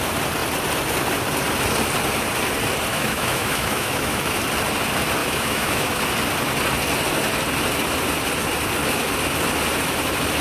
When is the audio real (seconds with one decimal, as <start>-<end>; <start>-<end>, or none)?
0.0-2.9; 4.4-5.2; 6.0-10.4

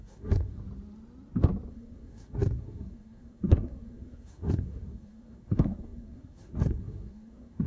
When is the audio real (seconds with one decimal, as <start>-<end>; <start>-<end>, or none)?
0.6-1.7

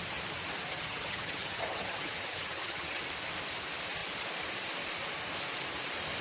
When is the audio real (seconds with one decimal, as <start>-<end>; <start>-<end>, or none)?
0.0-0.7; 3.0-6.2

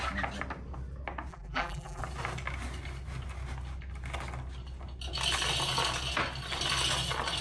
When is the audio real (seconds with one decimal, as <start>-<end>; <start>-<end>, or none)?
0.0-1.3; 2.0-7.4